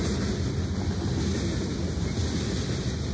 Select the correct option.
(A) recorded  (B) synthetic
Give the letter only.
A